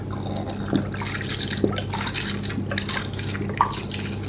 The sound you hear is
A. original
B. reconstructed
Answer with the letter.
A